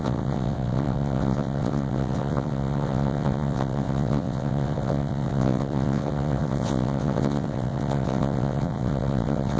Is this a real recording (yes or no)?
no